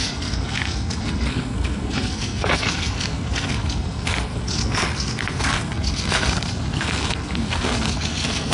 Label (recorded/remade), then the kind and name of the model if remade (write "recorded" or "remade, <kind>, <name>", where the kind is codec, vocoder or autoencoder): remade, codec, SNAC